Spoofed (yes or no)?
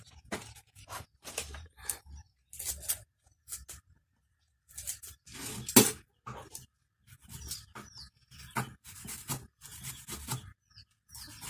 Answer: no